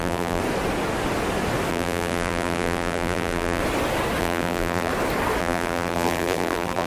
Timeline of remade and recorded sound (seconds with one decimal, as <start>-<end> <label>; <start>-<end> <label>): 0.0-0.4 remade; 0.4-1.7 recorded; 1.7-3.6 remade; 3.6-4.2 recorded; 4.2-4.9 remade; 4.9-5.4 recorded; 5.4-6.9 remade